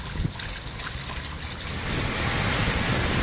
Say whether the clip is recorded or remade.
recorded